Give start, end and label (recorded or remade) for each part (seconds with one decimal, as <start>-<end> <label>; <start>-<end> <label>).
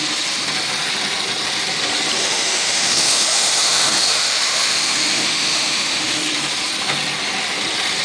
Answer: 0.0-2.2 recorded; 2.2-6.2 remade; 6.2-8.0 recorded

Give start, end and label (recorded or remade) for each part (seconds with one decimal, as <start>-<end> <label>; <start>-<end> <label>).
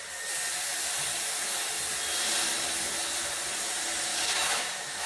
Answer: 0.0-4.1 recorded; 4.1-5.1 remade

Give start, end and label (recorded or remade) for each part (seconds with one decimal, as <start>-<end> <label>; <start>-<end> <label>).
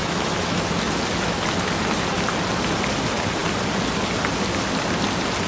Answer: 0.0-0.6 remade; 0.6-5.5 recorded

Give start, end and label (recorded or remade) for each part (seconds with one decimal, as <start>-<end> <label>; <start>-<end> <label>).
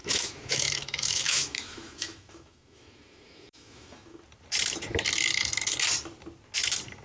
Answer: 0.0-4.2 remade; 4.2-7.0 recorded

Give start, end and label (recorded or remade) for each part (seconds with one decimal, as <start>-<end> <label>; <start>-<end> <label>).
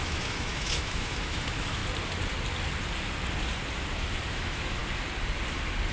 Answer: 0.0-1.8 remade; 1.8-4.3 recorded; 4.3-4.8 remade; 4.8-5.9 recorded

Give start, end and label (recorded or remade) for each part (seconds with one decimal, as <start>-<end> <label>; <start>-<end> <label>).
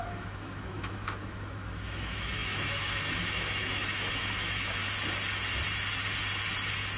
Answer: 0.0-4.8 remade; 4.8-7.0 recorded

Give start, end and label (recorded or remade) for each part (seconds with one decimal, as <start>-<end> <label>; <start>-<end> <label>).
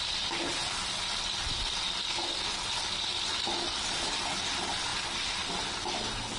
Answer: 0.0-6.4 recorded